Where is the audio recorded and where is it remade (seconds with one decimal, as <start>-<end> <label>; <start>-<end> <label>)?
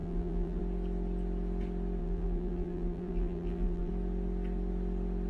0.0-0.6 remade; 0.6-2.0 recorded; 2.0-3.9 remade; 3.9-5.3 recorded